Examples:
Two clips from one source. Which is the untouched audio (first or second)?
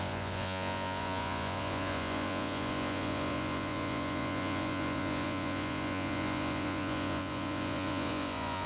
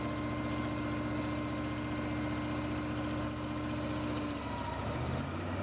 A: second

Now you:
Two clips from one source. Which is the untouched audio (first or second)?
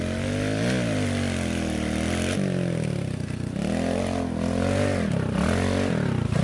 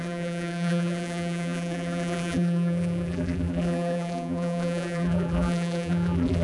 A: first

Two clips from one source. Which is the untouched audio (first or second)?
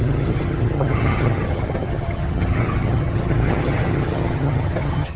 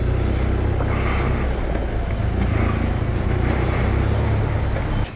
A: second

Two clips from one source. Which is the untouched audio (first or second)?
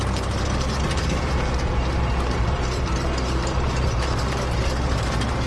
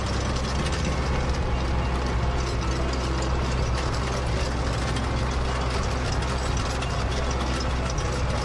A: second